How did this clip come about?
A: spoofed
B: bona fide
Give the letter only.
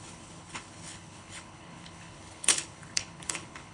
A